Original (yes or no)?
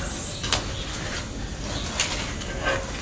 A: yes